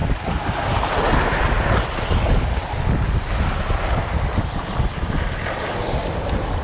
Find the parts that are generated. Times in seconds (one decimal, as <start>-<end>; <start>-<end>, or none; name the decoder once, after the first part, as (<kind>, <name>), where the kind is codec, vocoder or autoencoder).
none